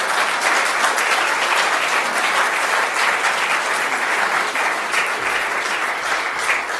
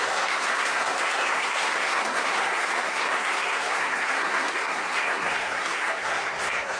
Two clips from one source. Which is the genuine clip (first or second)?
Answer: first